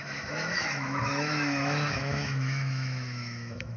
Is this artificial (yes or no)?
yes